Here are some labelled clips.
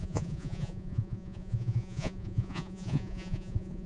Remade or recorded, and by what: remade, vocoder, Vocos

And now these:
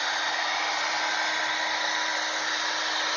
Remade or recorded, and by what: recorded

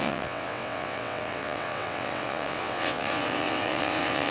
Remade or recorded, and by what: remade, vocoder, WaveNeXt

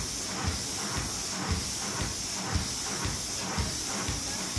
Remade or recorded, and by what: recorded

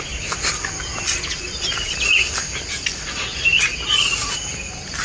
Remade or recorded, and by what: recorded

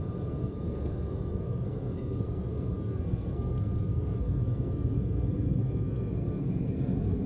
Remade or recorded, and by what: remade, codec, SNAC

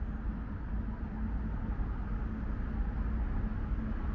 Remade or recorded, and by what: recorded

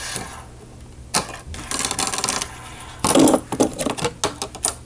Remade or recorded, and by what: recorded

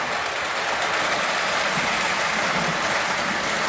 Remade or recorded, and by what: recorded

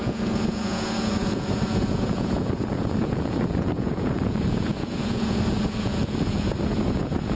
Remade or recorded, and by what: remade, vocoder, Vocos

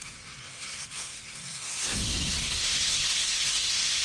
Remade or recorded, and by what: remade, codec, SNAC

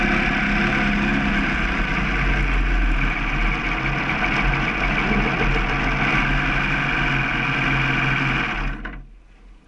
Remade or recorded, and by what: recorded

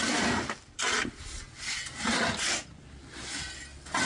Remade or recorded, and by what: recorded